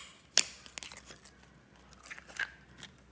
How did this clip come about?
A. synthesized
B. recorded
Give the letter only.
B